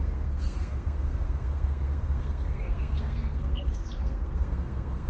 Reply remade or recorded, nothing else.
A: remade